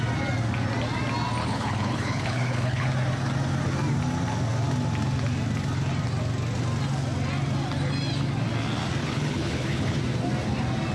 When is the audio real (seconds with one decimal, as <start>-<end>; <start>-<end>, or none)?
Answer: 0.0-1.4; 2.9-9.0; 10.0-10.9